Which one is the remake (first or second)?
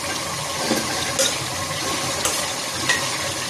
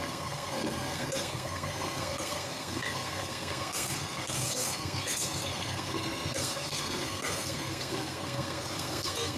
second